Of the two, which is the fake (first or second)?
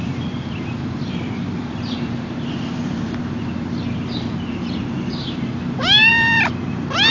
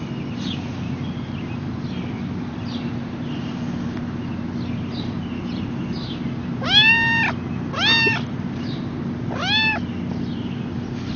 first